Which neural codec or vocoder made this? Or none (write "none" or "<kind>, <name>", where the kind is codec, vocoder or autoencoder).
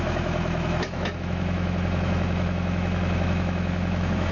autoencoder, DAC-VAE